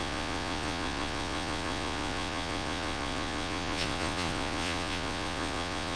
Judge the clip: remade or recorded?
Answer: remade